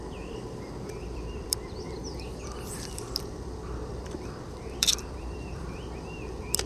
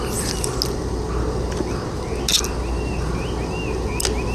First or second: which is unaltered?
second